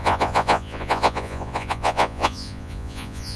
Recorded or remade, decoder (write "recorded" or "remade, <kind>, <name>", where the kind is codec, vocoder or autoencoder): remade, vocoder, Vocos